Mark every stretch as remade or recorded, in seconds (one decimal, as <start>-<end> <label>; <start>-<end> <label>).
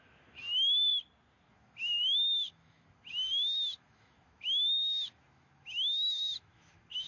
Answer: 0.0-0.9 remade; 0.9-1.5 recorded; 1.5-7.1 remade